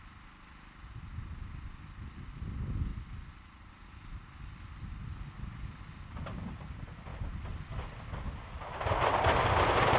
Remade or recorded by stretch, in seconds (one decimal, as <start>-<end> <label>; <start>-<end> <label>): 0.0-10.0 recorded